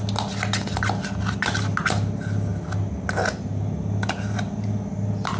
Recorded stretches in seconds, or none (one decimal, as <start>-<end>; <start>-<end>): 0.0-5.4